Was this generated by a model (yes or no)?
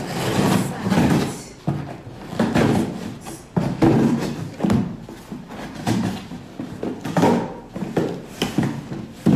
no